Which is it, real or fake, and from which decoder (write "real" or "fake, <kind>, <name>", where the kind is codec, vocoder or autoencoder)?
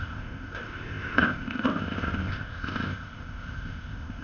fake, codec, ZipCodec